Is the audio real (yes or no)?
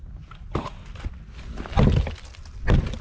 yes